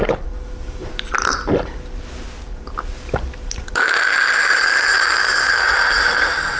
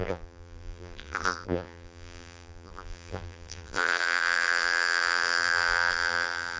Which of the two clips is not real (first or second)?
second